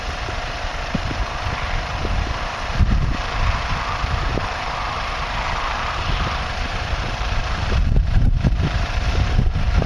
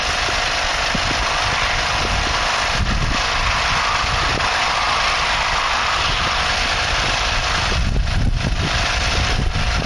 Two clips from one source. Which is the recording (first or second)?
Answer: second